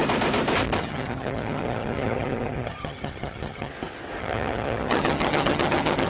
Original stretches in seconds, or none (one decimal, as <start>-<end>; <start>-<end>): 0.0-0.8; 3.7-4.2